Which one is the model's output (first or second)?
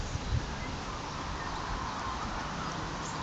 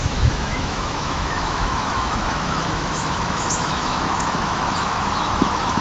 second